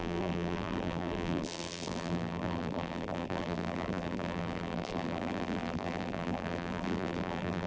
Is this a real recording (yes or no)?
no